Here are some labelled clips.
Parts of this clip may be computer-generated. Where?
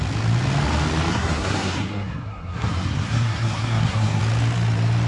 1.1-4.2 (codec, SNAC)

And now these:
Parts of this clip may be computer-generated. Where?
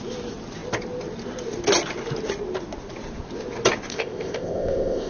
3.9-5.1 (codec, ZipCodec)